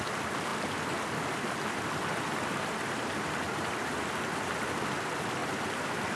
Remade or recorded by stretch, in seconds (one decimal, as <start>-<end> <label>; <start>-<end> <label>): 0.0-6.2 recorded